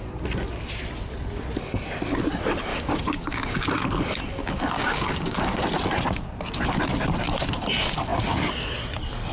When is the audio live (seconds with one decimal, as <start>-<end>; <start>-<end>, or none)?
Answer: 0.0-2.7; 3.7-4.4; 5.6-9.3